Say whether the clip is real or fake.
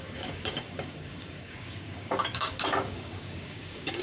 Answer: fake